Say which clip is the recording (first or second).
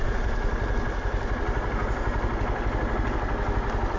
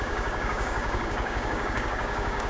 first